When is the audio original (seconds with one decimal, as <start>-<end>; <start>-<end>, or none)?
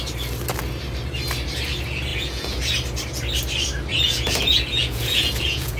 0.0-2.1; 2.6-3.9